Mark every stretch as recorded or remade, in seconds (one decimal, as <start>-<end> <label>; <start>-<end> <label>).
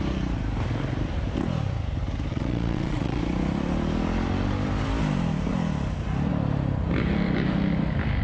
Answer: 0.0-2.3 recorded; 2.3-3.2 remade; 3.2-8.2 recorded